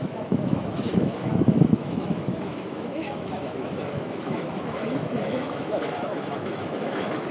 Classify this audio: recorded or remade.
remade